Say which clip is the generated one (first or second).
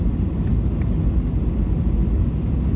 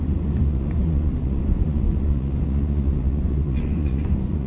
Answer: second